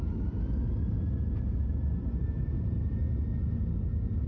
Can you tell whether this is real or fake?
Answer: real